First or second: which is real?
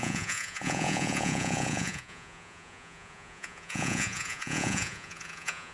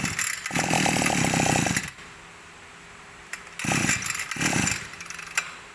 second